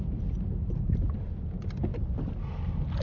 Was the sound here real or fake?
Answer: real